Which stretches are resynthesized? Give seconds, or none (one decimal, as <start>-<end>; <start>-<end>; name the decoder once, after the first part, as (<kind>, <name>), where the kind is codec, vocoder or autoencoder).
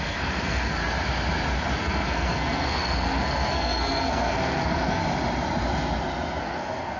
0.0-0.8 (codec, SNAC); 1.8-5.0; 6.4-7.0